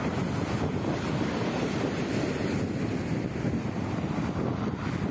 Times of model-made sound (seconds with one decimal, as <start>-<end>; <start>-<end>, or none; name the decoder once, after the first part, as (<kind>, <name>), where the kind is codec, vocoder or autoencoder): none